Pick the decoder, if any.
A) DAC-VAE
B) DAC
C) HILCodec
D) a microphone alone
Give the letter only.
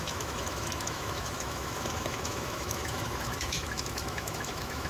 A